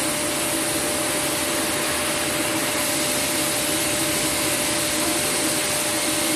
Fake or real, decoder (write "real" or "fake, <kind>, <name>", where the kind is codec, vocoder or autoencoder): real